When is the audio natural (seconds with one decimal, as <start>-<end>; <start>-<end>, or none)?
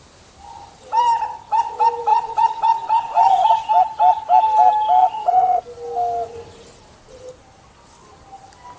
0.0-2.1; 3.7-5.0; 5.6-8.8